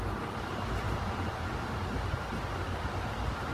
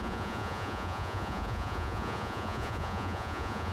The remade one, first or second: second